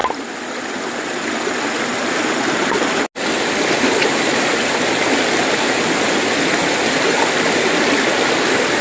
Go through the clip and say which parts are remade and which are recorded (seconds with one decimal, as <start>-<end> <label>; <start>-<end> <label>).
0.0-8.8 recorded